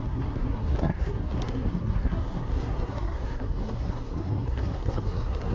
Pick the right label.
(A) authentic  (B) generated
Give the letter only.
B